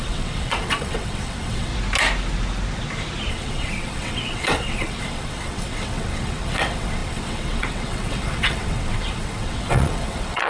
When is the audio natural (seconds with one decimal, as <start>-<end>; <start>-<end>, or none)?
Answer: 1.7-3.3